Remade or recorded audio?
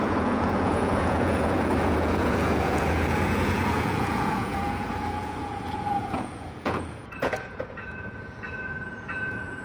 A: remade